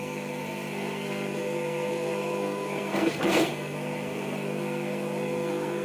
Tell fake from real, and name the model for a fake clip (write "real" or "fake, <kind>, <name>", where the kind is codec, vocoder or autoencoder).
fake, codec, SNAC